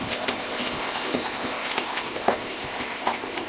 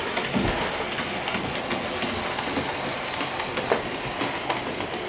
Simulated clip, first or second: first